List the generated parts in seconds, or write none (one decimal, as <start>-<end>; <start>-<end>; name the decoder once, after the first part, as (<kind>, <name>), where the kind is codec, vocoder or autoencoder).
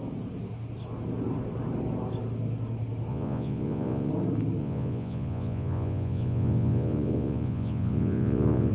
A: 3.1-4.1 (vocoder, Vocos); 4.6-8.7